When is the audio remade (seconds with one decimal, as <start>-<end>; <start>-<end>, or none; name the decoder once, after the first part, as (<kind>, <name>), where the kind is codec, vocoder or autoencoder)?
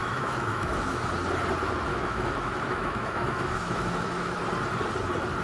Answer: 0.0-1.0 (autoencoder, DAC-VAE); 1.9-4.4